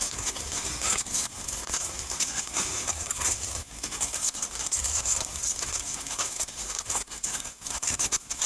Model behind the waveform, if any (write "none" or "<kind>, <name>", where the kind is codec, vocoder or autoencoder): codec, SNAC